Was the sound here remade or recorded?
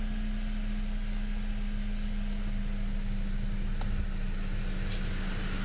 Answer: recorded